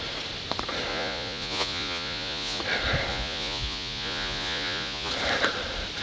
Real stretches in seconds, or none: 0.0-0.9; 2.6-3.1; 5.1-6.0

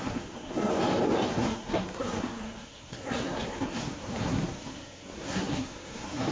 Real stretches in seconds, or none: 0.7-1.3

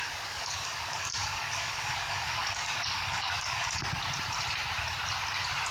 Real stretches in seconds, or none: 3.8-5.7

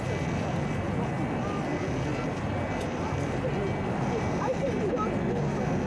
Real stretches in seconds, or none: 0.0-5.9

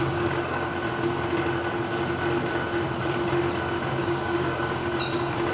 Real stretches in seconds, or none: 0.7-4.0; 4.8-5.5

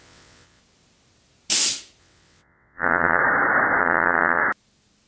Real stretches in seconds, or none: 0.6-2.0; 3.2-3.8; 4.4-5.1

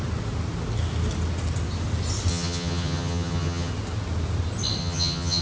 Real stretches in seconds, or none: 0.0-2.3; 3.7-4.8